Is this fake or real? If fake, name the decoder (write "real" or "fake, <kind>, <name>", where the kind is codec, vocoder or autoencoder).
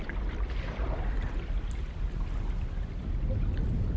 fake, vocoder, BigVGAN v2